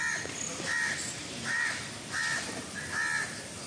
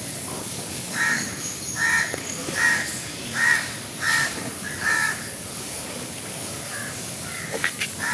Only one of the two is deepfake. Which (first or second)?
second